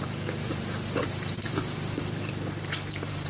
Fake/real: fake